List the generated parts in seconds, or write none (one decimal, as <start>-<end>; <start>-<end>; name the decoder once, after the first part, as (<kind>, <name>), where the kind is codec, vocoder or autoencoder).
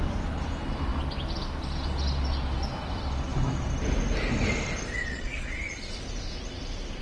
5.0-5.9 (vocoder, Vocos)